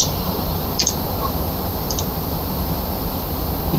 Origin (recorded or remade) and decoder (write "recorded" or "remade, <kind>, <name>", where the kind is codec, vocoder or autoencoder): remade, vocoder, BigVGAN v2